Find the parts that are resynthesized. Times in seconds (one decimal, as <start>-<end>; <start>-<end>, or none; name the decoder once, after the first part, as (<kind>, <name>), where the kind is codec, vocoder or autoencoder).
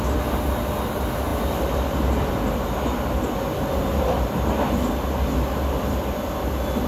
none